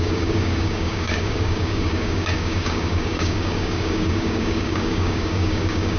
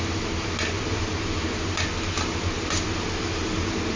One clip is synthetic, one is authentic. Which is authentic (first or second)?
second